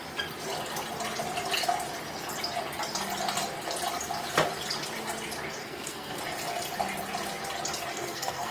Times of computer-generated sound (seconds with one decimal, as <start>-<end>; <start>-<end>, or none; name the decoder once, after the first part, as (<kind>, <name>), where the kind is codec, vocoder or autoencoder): 5.6-6.2 (codec, SNAC); 7.9-8.5

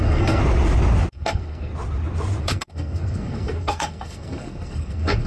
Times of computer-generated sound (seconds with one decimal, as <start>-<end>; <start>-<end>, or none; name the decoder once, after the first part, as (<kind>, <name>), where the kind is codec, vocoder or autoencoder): 0.0-0.4 (codec, SNAC); 1.1-1.7; 2.4-5.3

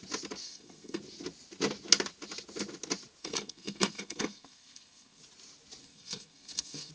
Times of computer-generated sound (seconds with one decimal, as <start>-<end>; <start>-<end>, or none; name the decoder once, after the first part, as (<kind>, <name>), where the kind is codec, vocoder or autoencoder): 0.4-1.0 (codec, SNAC); 3.2-5.2; 5.8-6.9

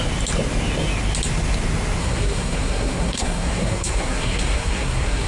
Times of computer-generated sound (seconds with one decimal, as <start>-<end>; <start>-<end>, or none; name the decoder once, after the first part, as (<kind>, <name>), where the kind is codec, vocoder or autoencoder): 2.0-5.3 (codec, SNAC)